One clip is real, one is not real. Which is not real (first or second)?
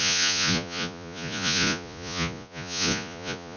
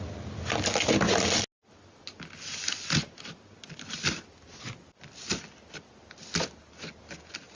first